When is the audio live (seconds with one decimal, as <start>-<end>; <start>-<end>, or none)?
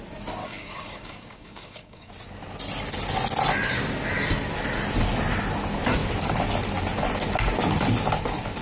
0.0-0.4; 2.1-8.6